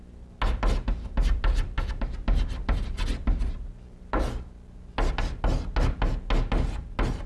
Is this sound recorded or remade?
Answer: recorded